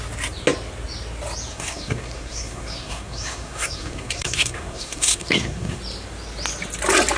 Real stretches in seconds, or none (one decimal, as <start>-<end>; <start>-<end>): 0.0-1.5; 5.8-7.2